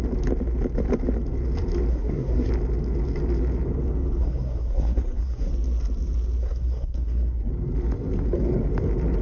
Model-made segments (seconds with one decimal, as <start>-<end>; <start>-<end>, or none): 1.9-2.5; 4.2-5.5; 6.4-7.5